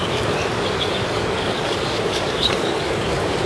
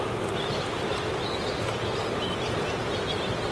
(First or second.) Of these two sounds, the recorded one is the second